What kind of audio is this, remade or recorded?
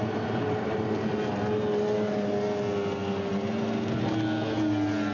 recorded